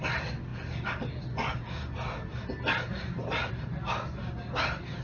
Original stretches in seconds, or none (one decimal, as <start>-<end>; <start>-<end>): 0.0-5.0